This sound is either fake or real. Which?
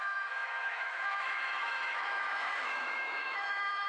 fake